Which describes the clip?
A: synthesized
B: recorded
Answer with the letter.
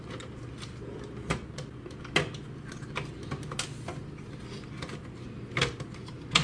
B